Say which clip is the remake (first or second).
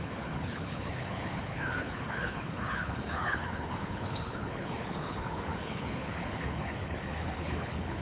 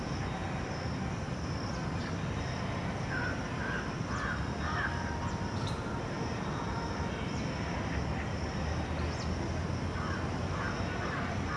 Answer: first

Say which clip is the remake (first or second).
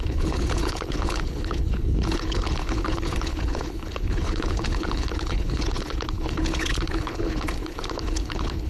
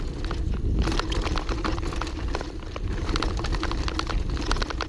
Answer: first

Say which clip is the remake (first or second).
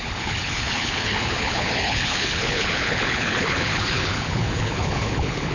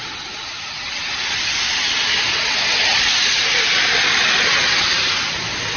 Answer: first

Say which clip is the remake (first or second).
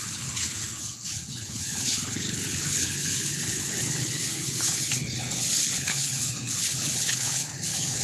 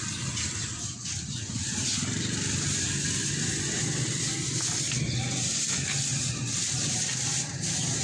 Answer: first